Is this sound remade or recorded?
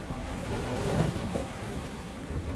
remade